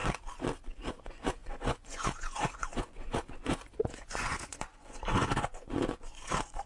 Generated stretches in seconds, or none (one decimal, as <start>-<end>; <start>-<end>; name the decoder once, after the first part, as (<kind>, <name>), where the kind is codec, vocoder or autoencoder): 0.9-6.7 (vocoder, Vocos)